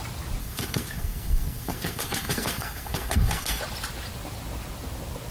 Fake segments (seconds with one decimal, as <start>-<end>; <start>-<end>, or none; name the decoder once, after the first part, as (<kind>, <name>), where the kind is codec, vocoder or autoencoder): 0.4-3.6 (codec, SNAC)